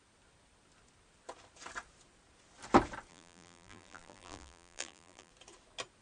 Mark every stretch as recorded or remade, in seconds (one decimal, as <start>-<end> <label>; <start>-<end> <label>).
0.0-3.1 recorded; 3.1-5.3 remade; 5.3-6.0 recorded